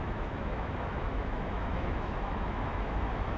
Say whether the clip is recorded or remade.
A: remade